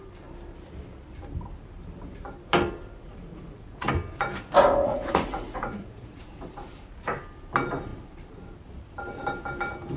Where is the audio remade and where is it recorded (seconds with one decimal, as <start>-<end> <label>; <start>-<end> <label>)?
0.0-3.3 recorded; 3.3-3.9 remade; 3.9-4.8 recorded; 4.8-6.8 remade; 6.8-10.0 recorded